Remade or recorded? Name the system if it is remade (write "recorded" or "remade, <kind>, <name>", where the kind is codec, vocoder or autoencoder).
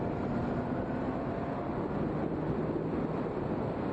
recorded